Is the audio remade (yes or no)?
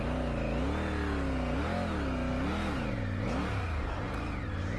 no